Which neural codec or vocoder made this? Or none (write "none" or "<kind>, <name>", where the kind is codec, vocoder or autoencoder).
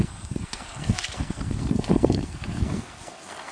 codec, SNAC